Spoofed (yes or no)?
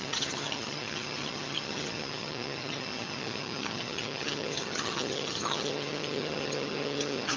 yes